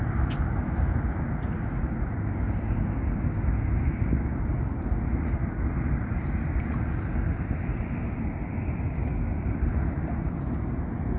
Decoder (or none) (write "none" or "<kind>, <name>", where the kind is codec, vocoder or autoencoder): none